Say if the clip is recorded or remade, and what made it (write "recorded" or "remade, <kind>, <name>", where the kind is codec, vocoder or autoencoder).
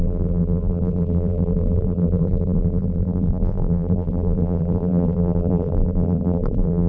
remade, vocoder, BigVGAN v2